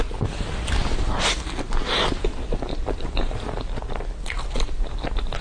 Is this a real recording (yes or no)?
yes